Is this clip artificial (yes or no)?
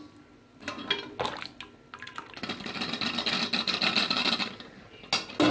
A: no